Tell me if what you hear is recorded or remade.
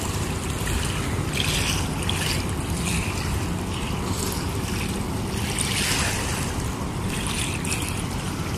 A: recorded